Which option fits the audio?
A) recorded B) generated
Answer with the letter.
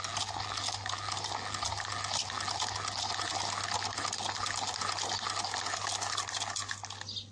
A